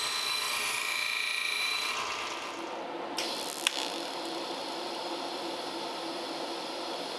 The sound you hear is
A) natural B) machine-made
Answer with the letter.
B